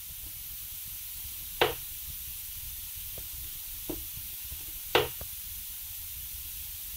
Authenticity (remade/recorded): recorded